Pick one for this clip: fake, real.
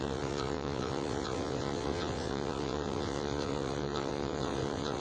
fake